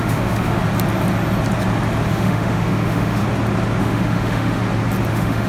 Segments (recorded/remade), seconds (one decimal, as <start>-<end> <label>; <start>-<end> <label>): 0.0-0.6 remade; 0.6-2.1 recorded; 2.1-3.2 remade; 3.2-3.8 recorded; 3.8-4.6 remade; 4.6-5.1 recorded; 5.1-5.5 remade